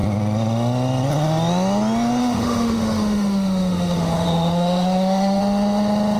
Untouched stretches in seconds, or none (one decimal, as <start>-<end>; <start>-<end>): 0.0-2.2; 5.4-6.2